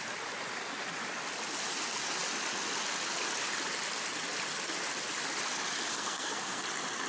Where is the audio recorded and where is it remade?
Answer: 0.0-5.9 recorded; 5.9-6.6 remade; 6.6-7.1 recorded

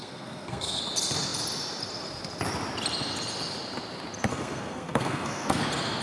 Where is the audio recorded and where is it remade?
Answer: 0.0-0.8 remade; 0.8-4.3 recorded; 4.3-5.6 remade; 5.6-6.0 recorded

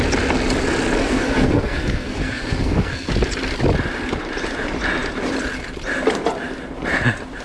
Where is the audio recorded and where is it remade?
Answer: 0.0-1.0 recorded; 1.0-3.1 remade; 3.1-7.4 recorded

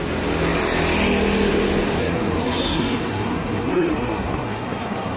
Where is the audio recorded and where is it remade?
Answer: 0.0-2.0 recorded; 2.0-5.2 remade